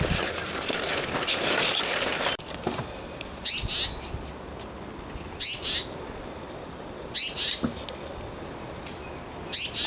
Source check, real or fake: real